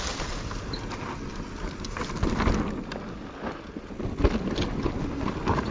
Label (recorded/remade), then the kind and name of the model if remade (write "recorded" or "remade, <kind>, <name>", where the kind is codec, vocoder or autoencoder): recorded